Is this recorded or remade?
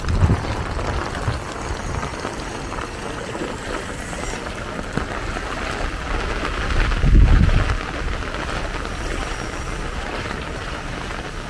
recorded